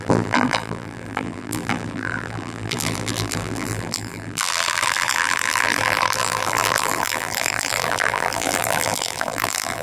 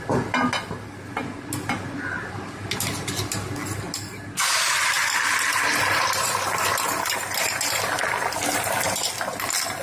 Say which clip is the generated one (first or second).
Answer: first